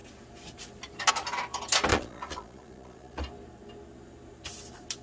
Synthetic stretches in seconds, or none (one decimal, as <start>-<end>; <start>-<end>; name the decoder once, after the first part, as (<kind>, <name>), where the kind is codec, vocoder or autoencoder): 1.9-3.2 (vocoder, Vocos)